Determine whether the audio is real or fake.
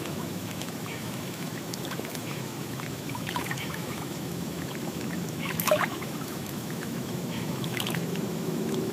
fake